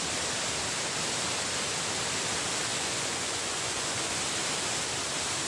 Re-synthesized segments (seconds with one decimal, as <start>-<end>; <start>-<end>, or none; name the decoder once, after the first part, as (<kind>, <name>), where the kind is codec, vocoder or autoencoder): 2.7-4.2 (vocoder, Vocos)